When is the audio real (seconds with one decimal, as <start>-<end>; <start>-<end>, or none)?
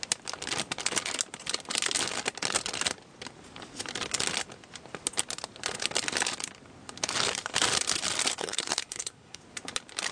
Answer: 0.0-8.4; 9.4-10.1